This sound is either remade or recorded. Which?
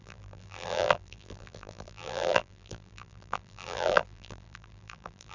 remade